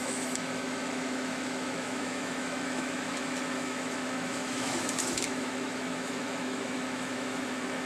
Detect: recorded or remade remade